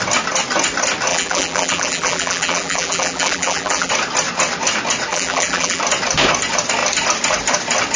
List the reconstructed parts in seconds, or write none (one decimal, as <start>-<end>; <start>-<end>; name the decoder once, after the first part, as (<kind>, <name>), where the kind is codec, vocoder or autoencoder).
1.1-3.9 (vocoder, BigVGAN v2); 5.1-5.8